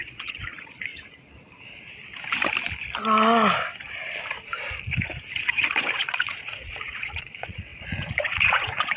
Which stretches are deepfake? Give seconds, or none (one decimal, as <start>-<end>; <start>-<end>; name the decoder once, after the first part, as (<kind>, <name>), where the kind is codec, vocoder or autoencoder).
0.0-0.9 (vocoder, Vocos); 5.3-9.0